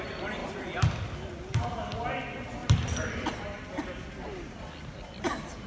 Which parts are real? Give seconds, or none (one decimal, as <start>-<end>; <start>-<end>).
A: 0.0-0.4; 1.6-2.6; 4.7-5.7